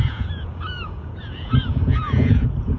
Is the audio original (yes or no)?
no